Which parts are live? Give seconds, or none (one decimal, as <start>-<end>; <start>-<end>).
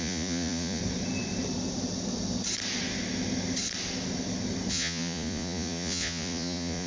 0.8-4.7